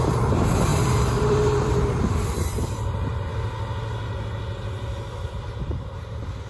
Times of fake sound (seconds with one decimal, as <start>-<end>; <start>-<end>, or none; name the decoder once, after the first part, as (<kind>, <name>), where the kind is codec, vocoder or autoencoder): 0.0-3.3 (vocoder, BigVGAN v2); 5.6-6.5